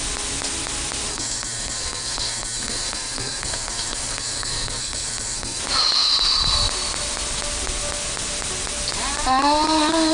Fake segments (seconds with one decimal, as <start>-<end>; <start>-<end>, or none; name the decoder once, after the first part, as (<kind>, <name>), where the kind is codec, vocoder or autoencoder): 1.1-5.6 (codec, SNAC)